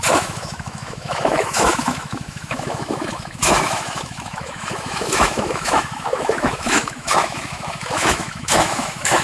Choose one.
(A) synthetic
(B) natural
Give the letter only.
A